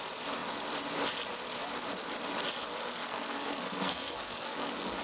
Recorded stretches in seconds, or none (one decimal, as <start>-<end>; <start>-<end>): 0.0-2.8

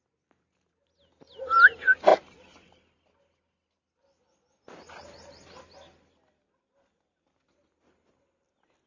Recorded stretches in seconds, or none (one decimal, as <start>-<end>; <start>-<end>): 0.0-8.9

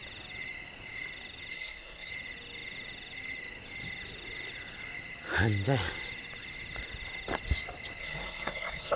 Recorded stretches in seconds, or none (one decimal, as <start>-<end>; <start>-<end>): 0.0-1.5; 2.1-8.0

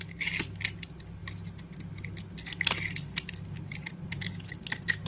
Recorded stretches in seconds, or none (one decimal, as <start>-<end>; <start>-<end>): 0.0-5.1

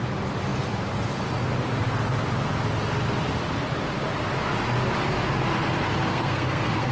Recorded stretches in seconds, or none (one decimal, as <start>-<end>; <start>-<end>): 0.0-6.1

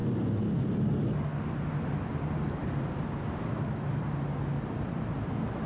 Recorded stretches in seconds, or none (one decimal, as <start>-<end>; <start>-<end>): 0.0-5.7

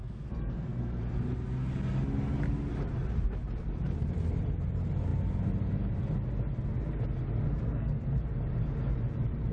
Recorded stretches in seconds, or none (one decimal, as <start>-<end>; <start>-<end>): 1.0-7.5; 8.1-9.5